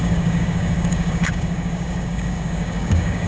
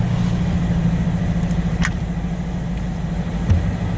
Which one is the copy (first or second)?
first